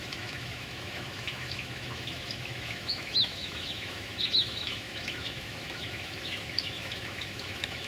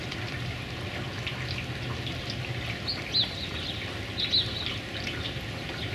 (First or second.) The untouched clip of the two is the second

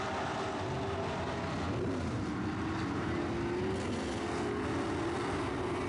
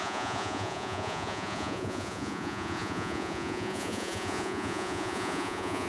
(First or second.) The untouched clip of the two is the first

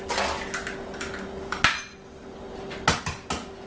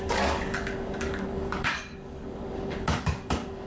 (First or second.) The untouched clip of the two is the first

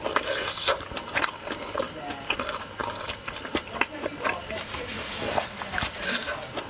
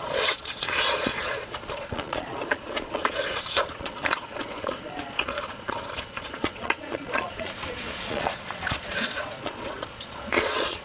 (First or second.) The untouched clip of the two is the first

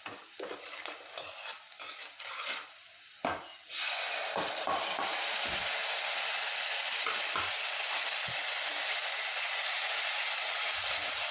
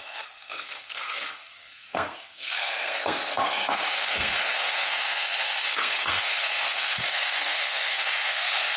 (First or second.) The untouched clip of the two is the first